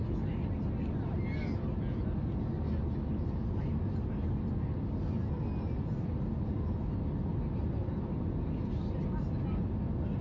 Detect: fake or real real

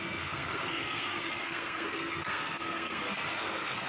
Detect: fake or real fake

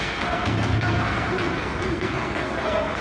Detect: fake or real fake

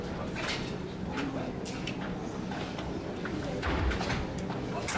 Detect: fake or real real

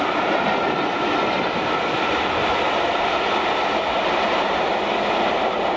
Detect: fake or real real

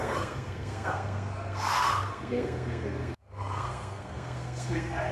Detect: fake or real fake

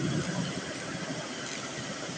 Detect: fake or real real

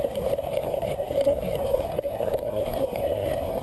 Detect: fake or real fake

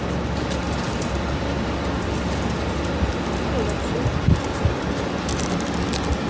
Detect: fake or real real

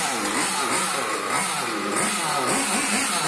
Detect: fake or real real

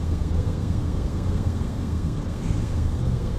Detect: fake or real fake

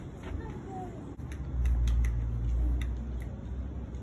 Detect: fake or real real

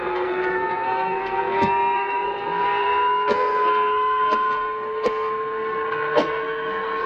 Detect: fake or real fake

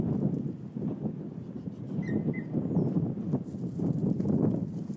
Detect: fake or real real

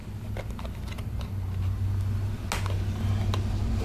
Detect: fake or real real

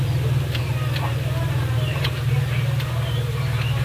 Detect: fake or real real